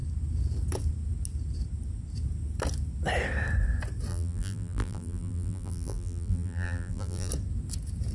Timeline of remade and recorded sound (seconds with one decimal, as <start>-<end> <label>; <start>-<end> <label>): 0.0-4.1 recorded; 4.1-7.3 remade; 7.3-8.1 recorded